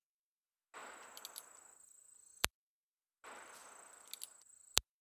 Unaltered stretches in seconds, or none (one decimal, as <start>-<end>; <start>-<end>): 0.0-0.8; 2.6-3.6; 4.1-5.0